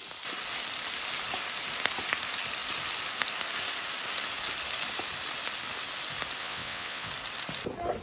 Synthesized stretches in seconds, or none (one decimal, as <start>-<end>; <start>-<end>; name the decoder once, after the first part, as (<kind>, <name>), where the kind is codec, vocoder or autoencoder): 6.4-7.1 (vocoder, WaveNeXt)